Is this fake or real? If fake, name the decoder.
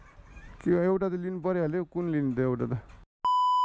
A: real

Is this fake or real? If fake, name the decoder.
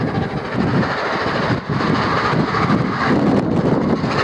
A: real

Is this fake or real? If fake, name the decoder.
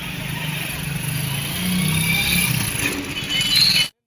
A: real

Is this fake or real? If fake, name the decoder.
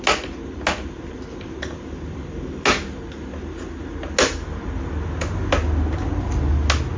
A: real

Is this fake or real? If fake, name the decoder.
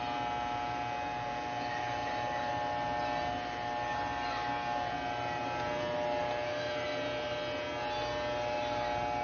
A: real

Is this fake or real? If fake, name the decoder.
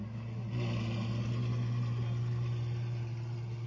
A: real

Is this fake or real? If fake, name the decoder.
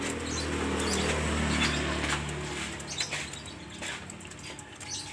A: real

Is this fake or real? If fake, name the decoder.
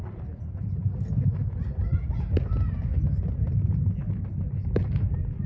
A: real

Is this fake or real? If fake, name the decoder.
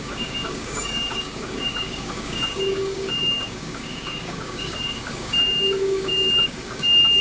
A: fake, codec, DAC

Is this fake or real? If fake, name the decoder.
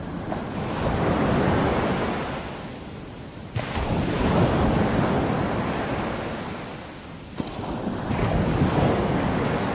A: real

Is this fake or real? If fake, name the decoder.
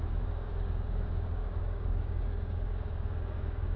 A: fake, codec, DAC